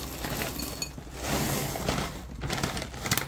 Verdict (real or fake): real